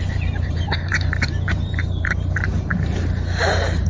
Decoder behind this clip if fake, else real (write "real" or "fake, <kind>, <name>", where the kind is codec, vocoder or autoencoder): fake, vocoder, BigVGAN v2